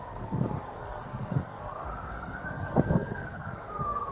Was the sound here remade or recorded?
remade